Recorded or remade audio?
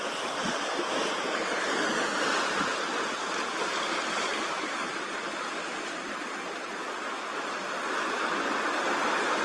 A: recorded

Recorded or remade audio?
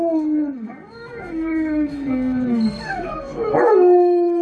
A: remade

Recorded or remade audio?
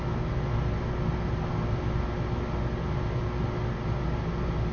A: recorded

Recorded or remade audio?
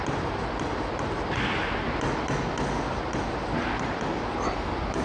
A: recorded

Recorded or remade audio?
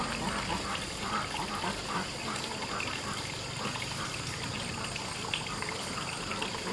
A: recorded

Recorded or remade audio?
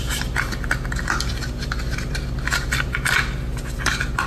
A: recorded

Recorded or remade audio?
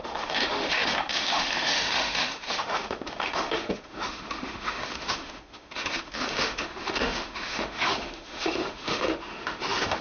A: remade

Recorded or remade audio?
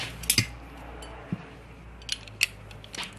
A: recorded